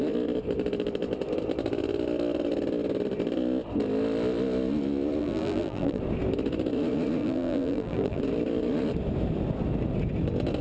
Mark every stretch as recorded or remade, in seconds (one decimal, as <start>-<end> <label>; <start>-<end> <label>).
0.0-5.2 recorded; 5.2-6.0 remade; 6.0-7.2 recorded; 7.2-8.2 remade; 8.2-10.6 recorded